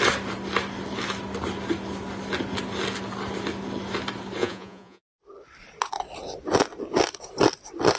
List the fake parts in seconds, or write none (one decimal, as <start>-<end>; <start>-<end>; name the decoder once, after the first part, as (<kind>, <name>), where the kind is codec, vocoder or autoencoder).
4.4-5.2 (vocoder, Vocos)

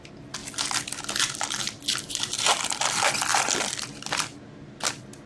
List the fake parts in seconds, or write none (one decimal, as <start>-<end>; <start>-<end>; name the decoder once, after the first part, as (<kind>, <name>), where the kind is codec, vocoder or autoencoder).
none

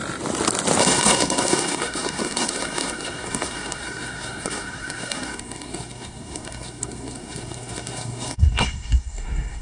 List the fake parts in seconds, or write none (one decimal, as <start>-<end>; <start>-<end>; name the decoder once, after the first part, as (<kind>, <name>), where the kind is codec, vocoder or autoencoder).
0.8-9.6 (codec, SNAC)

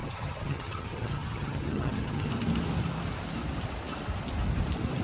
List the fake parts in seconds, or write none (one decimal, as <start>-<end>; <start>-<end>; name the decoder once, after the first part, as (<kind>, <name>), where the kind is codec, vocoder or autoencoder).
0.0-2.3 (vocoder, HiFi-GAN)